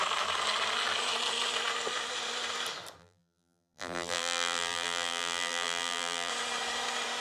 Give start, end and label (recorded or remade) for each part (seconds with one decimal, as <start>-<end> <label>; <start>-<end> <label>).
0.0-3.0 recorded; 3.0-6.3 remade; 6.3-7.2 recorded